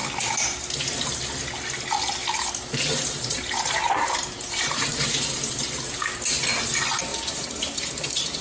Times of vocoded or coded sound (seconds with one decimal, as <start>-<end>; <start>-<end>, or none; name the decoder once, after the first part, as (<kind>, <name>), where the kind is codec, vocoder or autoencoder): 2.2-6.5 (vocoder, BigVGAN v2); 7.1-8.4